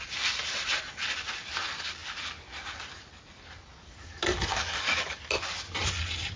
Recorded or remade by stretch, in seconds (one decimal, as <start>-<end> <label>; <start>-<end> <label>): 0.0-4.5 recorded; 4.5-5.4 remade; 5.4-6.4 recorded